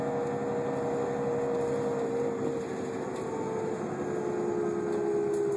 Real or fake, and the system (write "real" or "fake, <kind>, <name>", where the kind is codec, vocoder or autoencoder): real